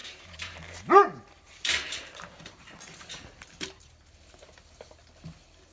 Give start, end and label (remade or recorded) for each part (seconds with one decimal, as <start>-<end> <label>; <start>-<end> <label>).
0.0-2.6 remade; 2.6-5.7 recorded